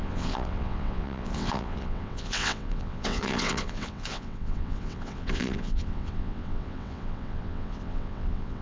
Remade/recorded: remade